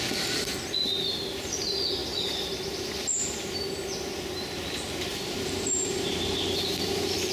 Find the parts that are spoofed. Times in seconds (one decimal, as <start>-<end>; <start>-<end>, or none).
5.1-6.3